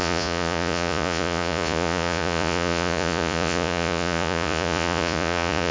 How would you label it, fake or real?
fake